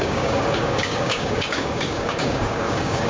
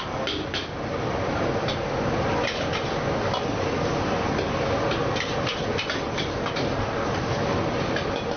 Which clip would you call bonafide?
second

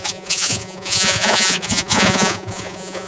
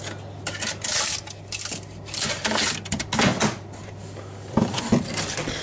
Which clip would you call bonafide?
second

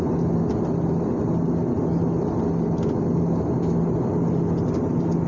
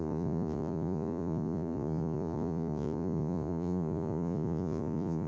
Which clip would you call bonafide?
first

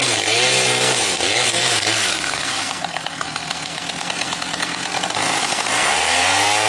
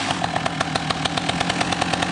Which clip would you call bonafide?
second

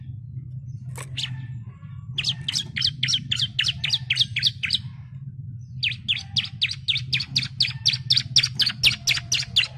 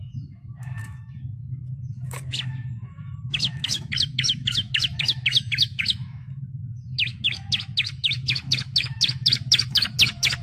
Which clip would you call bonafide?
first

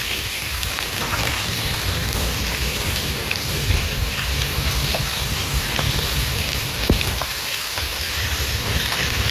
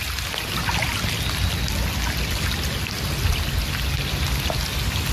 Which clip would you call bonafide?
second